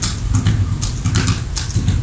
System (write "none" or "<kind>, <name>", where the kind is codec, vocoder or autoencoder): none